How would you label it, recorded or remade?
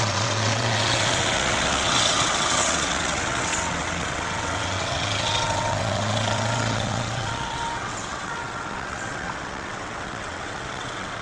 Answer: remade